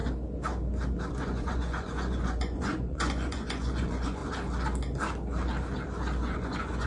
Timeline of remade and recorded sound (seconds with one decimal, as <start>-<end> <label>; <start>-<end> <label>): 0.0-1.1 recorded; 1.1-4.2 remade; 4.2-6.2 recorded; 6.2-6.9 remade